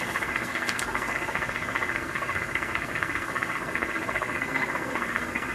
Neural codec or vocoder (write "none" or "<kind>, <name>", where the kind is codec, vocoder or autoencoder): codec, SNAC